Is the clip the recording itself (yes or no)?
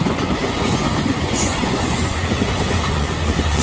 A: no